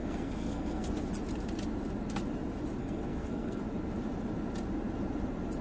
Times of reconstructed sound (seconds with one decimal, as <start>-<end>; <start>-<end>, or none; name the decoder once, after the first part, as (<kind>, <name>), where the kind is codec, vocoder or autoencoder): 0.0-0.9 (codec, SNAC); 2.8-3.6